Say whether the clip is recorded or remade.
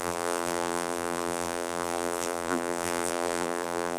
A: remade